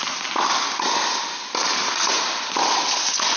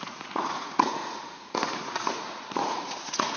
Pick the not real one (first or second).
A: second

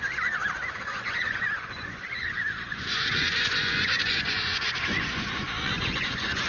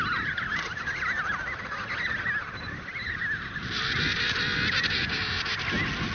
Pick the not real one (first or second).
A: first